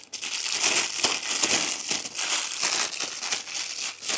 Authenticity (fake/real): real